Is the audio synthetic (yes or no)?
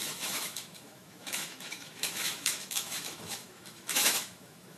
yes